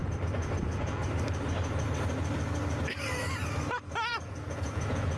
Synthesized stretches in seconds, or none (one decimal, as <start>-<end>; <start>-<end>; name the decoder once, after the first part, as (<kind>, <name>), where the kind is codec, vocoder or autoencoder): 0.6-1.0 (vocoder, Vocos); 4.1-5.2